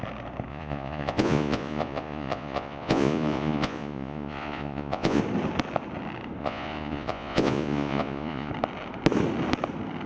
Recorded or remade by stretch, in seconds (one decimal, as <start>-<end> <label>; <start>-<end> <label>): 0.0-0.5 recorded; 0.5-5.2 remade; 5.2-6.4 recorded; 6.4-8.5 remade; 8.5-10.1 recorded